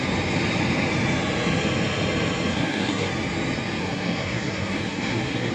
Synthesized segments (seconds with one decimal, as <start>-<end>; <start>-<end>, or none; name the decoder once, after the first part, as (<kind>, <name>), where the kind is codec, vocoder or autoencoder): 2.5-3.1 (codec, SNAC); 3.8-5.5